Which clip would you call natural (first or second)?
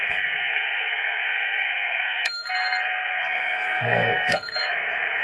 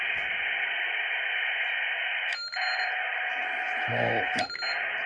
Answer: second